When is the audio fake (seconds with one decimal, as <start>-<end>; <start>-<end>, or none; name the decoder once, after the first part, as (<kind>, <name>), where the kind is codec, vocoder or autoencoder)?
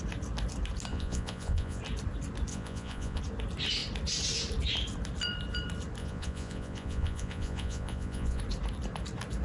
0.9-1.8 (vocoder, Vocos); 2.5-3.2; 6.0-8.4